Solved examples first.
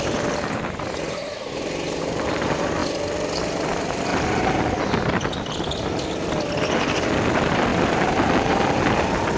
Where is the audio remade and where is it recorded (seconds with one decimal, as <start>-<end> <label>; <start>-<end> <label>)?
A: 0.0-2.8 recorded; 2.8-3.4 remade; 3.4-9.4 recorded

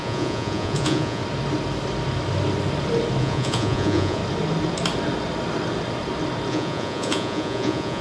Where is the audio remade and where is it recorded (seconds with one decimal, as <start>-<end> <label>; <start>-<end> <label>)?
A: 0.0-1.2 remade; 1.2-3.2 recorded; 3.2-4.2 remade; 4.2-6.5 recorded; 6.5-8.0 remade

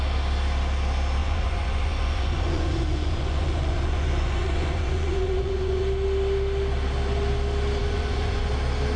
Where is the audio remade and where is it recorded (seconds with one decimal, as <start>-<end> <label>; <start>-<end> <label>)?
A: 0.0-1.2 recorded; 1.2-5.8 remade; 5.8-7.8 recorded; 7.8-8.5 remade; 8.5-9.0 recorded